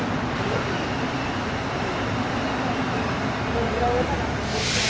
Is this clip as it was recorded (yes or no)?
yes